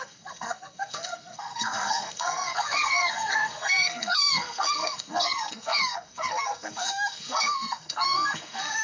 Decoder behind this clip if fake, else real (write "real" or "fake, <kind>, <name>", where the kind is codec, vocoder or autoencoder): fake, codec, SNAC